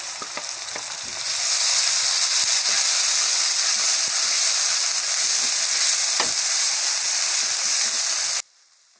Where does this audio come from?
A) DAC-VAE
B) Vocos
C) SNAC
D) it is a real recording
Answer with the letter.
D